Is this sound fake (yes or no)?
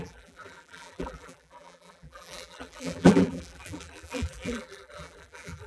yes